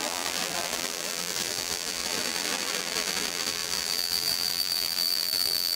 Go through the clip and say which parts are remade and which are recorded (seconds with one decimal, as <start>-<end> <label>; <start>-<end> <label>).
0.0-5.8 remade